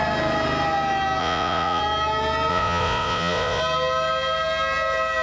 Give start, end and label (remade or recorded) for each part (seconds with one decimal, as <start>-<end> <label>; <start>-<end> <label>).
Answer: 0.0-1.2 recorded; 1.2-1.8 remade; 1.8-2.5 recorded; 2.5-3.6 remade; 3.6-5.2 recorded